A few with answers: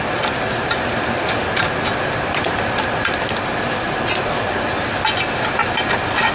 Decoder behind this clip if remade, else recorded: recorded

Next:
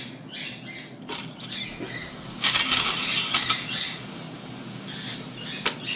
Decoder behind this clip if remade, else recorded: recorded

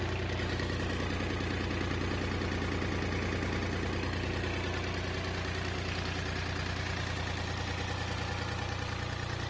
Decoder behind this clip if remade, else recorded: recorded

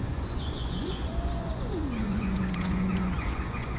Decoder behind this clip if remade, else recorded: remade, vocoder, Vocos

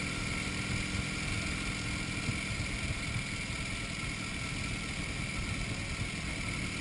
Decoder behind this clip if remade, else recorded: recorded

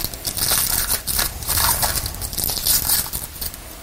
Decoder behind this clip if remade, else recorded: recorded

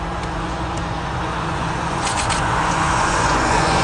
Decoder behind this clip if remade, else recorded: remade, vocoder, Vocos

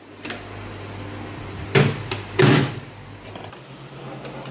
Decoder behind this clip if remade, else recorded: recorded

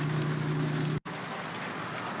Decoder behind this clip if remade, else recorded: recorded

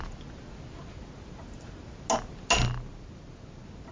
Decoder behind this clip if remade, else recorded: recorded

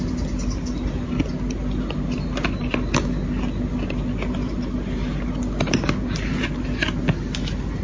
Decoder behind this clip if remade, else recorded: recorded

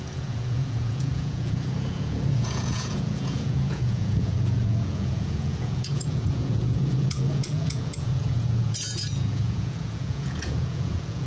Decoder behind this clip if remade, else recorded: remade, vocoder, Vocos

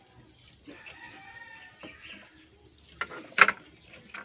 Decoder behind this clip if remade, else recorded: recorded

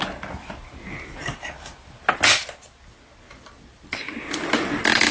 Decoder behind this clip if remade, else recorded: recorded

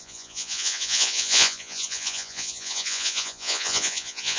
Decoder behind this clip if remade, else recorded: remade, vocoder, Vocos